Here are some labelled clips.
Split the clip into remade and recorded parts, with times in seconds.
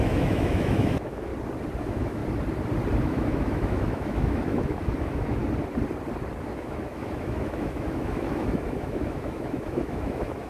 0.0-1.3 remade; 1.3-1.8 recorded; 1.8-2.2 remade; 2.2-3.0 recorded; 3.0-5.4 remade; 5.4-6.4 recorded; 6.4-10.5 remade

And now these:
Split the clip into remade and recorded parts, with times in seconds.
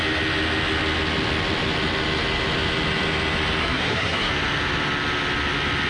0.0-3.6 recorded; 3.6-4.3 remade; 4.3-5.9 recorded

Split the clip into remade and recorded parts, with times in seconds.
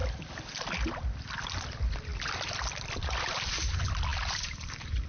0.0-5.1 recorded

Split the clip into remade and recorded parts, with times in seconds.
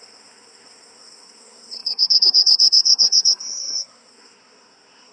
0.0-5.1 remade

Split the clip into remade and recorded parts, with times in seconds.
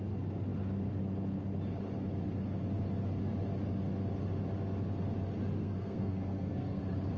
0.0-5.6 recorded; 5.6-6.8 remade; 6.8-7.2 recorded